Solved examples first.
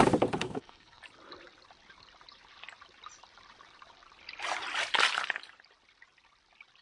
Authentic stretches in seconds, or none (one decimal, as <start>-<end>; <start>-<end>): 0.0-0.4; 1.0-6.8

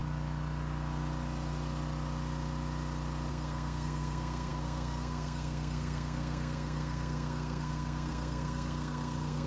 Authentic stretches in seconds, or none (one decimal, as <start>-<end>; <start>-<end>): 0.0-3.3

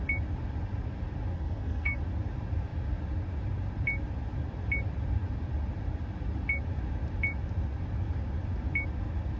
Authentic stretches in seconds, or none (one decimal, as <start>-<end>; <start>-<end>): 0.0-1.3; 2.0-9.4

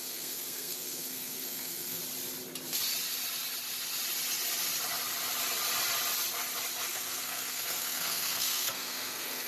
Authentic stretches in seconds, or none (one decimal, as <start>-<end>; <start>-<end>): 2.0-6.9